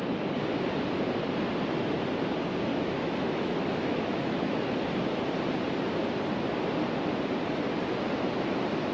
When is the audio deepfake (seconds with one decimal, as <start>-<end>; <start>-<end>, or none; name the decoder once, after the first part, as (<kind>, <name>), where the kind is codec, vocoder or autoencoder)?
2.7-4.7 (autoencoder, DAC-VAE)